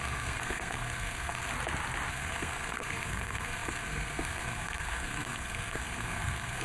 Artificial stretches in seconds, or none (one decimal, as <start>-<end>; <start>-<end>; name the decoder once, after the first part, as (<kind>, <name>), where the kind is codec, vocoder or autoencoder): 0.0-1.5 (codec, SNAC); 2.1-6.6